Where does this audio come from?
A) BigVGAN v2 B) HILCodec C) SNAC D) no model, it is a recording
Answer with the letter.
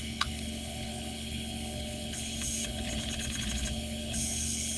B